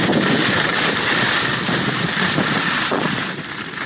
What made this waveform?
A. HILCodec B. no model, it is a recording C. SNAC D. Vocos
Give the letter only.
B